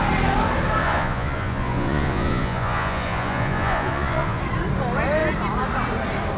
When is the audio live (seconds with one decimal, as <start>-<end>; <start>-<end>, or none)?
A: 0.0-0.8; 4.4-6.4